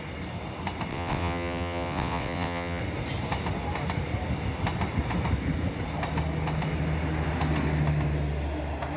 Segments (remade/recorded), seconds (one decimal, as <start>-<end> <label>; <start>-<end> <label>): 0.0-0.9 recorded; 0.9-2.8 remade; 2.8-9.0 recorded